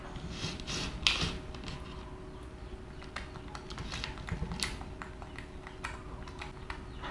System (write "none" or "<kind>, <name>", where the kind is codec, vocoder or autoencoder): none